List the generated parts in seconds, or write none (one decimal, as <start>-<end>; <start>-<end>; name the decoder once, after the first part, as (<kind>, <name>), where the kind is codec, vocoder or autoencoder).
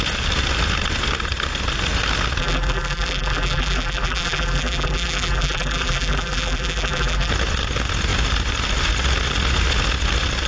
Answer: 2.4-7.3 (vocoder, BigVGAN v2)